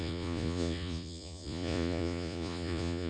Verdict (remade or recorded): remade